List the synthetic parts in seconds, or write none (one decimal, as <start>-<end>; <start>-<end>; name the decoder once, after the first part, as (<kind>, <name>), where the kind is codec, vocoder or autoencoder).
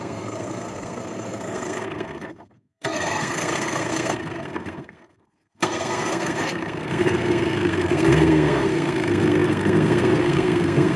0.0-11.0 (codec, SNAC)